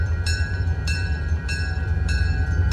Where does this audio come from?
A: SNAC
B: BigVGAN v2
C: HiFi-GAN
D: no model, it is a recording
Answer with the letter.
B